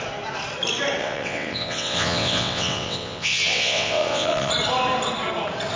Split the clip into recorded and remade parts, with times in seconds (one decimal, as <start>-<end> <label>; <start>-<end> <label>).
0.0-1.0 recorded; 1.0-4.5 remade; 4.5-5.8 recorded